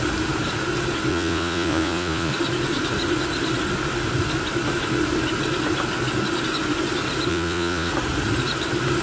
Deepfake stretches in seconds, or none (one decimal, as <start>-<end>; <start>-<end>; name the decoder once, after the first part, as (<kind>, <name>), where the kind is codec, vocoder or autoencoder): 1.1-2.3 (vocoder, Vocos); 7.3-7.9